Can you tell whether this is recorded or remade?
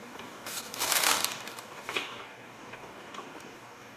remade